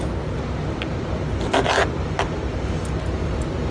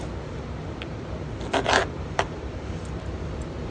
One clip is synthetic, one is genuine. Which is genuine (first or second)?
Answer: first